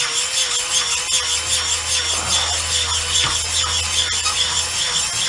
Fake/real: real